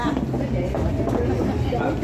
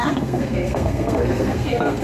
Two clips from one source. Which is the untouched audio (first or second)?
first